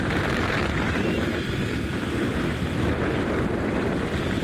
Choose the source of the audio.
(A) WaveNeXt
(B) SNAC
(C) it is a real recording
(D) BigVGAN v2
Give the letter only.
D